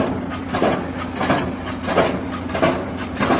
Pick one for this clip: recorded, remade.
recorded